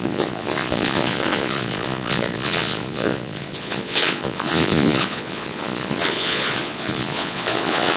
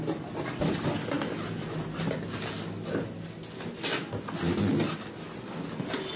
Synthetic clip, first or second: first